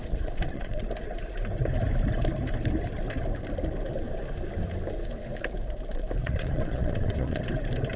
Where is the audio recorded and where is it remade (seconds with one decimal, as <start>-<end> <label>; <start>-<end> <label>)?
0.0-0.8 remade; 0.8-6.2 recorded; 6.2-7.4 remade; 7.4-8.0 recorded